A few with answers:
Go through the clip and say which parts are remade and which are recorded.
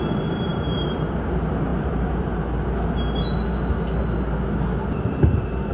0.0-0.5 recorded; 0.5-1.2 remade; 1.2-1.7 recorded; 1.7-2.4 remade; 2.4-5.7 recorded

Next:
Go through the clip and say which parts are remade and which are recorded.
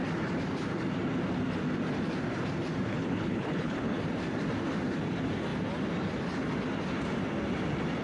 0.0-2.9 recorded; 2.9-4.0 remade; 4.0-8.0 recorded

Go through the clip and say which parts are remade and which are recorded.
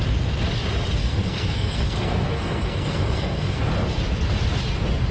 0.0-1.0 recorded; 1.0-3.6 remade; 3.6-5.1 recorded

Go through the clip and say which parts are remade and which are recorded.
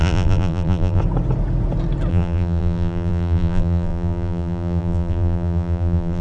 0.0-1.0 remade; 1.0-2.1 recorded; 2.1-6.2 remade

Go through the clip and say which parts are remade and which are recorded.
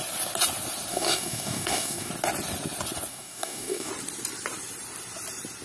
0.0-0.9 recorded; 0.9-2.1 remade; 2.1-3.1 recorded; 3.1-3.9 remade; 3.9-5.6 recorded